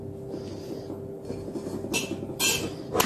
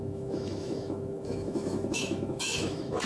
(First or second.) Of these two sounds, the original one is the first